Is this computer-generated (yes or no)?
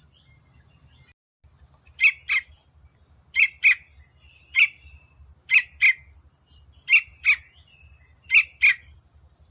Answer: no